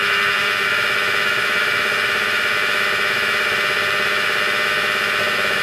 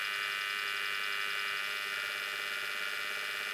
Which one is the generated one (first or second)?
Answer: first